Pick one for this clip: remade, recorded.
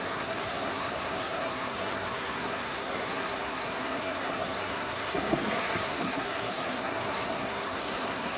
remade